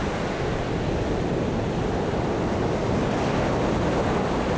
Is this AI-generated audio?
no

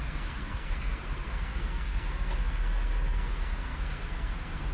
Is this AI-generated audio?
yes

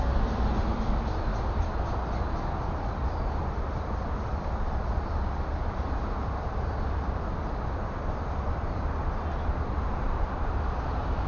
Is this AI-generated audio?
no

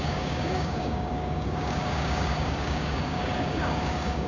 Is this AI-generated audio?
yes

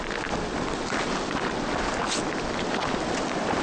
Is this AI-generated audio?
no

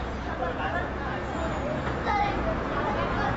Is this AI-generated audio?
yes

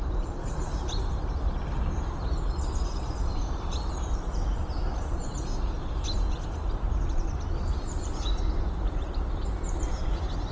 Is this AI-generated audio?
no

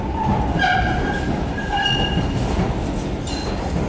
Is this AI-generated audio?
no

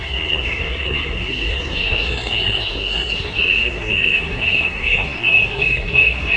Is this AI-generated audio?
yes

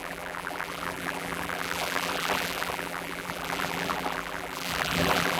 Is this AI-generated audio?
yes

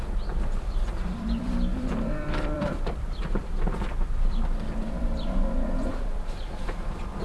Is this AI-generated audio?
yes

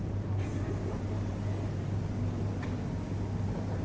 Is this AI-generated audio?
no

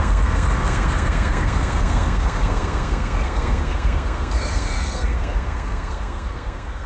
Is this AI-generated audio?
yes